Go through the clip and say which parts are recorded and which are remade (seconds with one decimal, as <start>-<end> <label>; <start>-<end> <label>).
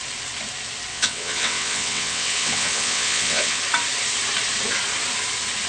0.0-0.9 recorded; 0.9-3.6 remade; 3.6-5.7 recorded